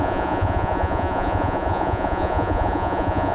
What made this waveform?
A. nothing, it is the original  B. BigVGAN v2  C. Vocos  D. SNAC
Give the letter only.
C